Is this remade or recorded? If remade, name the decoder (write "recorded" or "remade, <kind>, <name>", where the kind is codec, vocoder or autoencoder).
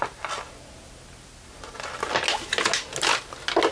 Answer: recorded